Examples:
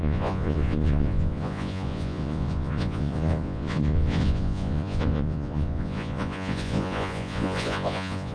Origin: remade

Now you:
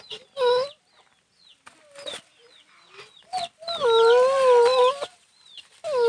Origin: recorded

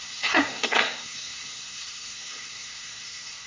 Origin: remade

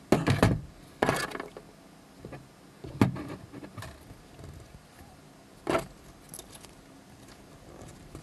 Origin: recorded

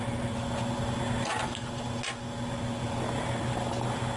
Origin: recorded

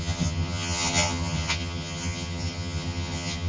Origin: remade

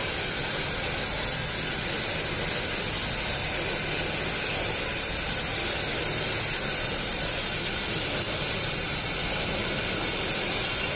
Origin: recorded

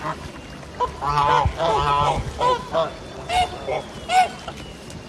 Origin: recorded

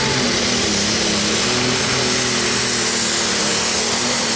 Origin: recorded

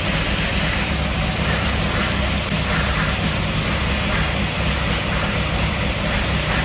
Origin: recorded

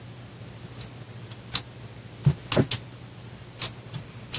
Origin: recorded